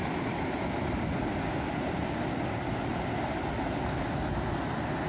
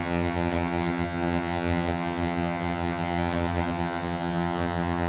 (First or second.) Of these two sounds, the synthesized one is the second